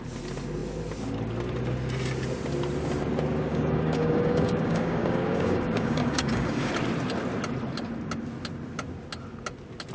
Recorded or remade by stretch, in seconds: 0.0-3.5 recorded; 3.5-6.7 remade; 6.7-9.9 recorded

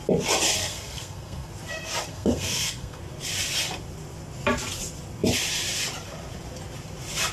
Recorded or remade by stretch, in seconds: 0.0-0.6 recorded; 0.6-1.5 remade; 1.5-2.1 recorded; 2.1-3.0 remade; 3.0-7.3 recorded

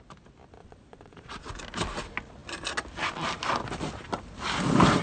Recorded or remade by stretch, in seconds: 0.0-0.6 recorded; 0.6-1.5 remade; 1.5-5.0 recorded

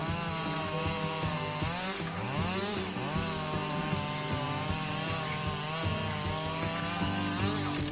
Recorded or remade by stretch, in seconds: 0.0-7.9 recorded

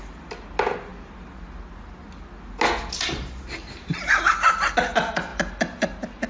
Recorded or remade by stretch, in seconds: 0.0-6.3 recorded

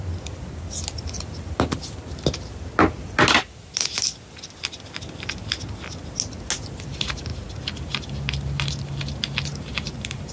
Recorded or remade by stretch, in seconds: 0.0-9.5 recorded; 9.5-10.3 remade

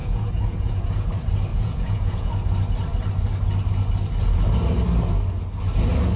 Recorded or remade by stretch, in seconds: 0.0-1.1 remade; 1.1-1.5 recorded; 1.5-2.3 remade; 2.3-6.2 recorded